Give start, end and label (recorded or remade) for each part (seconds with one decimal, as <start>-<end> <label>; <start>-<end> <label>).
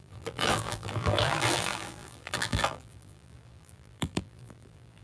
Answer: 0.0-5.0 remade